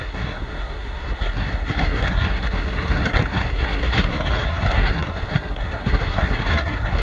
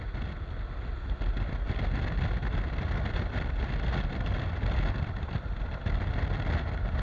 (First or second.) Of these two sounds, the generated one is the first